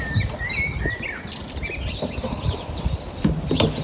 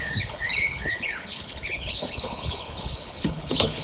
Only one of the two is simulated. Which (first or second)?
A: second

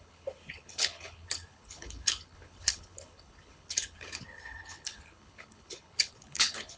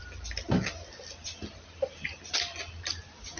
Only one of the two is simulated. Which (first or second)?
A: first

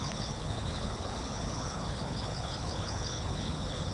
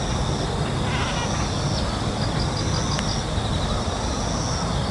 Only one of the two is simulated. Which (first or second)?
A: first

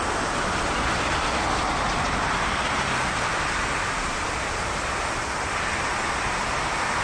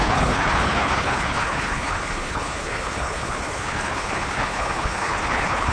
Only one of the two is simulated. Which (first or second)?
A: second